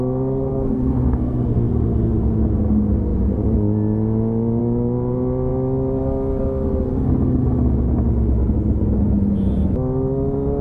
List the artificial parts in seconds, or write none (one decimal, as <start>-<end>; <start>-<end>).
0.5-1.7